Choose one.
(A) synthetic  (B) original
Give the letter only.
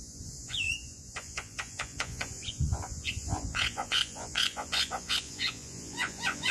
A